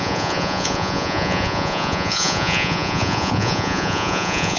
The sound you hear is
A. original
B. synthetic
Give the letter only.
B